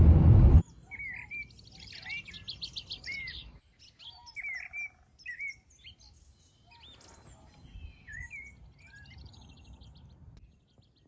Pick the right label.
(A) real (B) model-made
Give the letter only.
A